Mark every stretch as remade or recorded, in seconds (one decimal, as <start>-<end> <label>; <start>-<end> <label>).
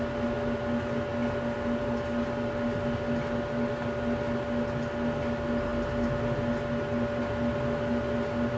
0.0-8.6 recorded